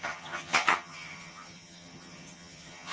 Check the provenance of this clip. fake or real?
fake